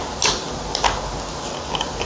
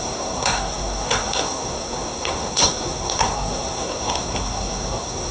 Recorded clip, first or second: first